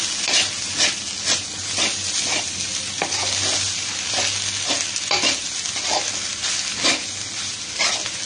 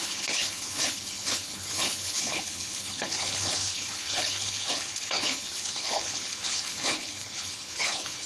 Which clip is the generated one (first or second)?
second